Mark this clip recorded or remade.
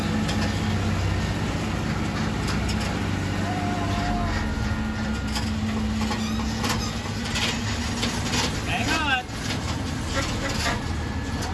recorded